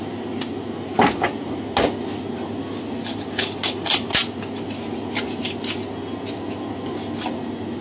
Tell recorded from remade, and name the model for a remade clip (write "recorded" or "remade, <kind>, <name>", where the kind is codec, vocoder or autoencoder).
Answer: recorded